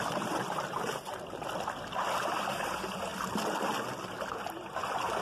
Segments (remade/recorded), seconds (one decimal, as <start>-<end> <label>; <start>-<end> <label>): 0.0-5.2 recorded